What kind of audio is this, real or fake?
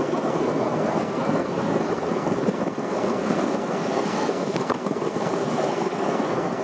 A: fake